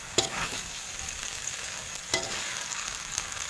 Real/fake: fake